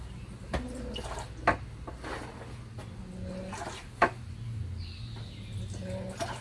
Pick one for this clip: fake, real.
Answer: real